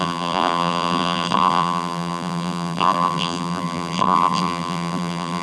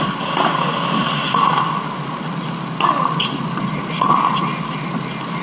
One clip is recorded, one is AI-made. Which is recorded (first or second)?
second